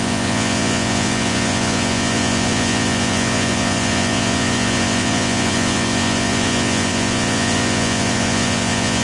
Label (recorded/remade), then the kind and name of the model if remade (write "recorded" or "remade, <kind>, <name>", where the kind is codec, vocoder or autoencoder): remade, vocoder, Vocos